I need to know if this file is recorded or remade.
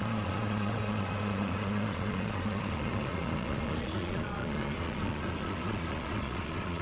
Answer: remade